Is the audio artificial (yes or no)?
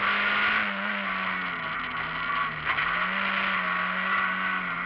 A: no